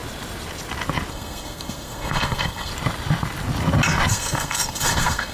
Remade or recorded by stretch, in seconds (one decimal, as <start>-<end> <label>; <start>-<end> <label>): 0.0-1.1 recorded; 1.1-2.7 remade; 2.7-4.1 recorded; 4.1-5.3 remade